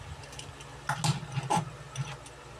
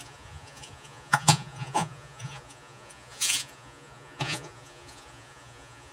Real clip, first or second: first